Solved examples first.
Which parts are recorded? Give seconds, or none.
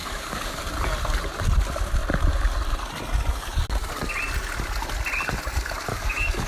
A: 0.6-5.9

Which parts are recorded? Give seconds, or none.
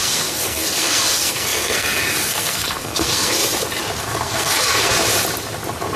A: 3.4-4.0; 4.9-6.0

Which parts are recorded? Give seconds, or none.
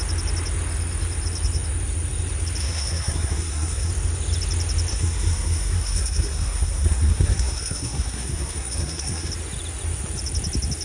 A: 0.0-2.6; 3.9-4.9; 9.3-10.8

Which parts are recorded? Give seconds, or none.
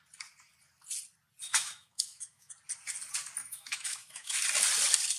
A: 0.0-1.5; 2.5-3.4; 4.4-5.2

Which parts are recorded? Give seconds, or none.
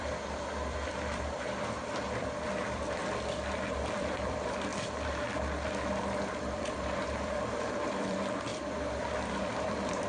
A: 3.0-3.9; 4.7-6.4; 8.5-9.4